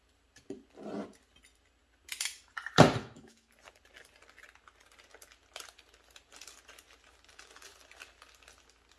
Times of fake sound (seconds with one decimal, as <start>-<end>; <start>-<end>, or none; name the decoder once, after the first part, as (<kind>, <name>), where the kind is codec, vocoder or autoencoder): 3.0-3.5 (autoencoder, DAC-VAE)